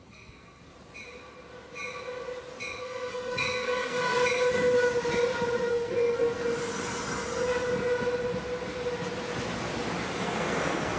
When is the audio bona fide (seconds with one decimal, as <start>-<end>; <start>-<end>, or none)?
0.7-2.8; 4.1-5.7; 6.4-10.1